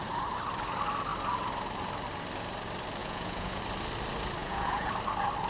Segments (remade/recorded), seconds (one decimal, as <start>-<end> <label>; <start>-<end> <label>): 0.0-3.0 recorded; 3.0-3.6 remade; 3.6-4.4 recorded; 4.4-4.9 remade; 4.9-5.5 recorded